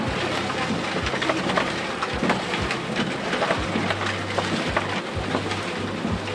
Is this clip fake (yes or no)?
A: no